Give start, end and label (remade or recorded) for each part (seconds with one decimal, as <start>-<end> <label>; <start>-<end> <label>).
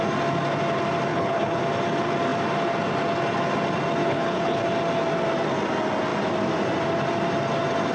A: 0.0-1.1 recorded; 1.1-1.6 remade; 1.6-4.0 recorded; 4.0-4.6 remade; 4.6-7.9 recorded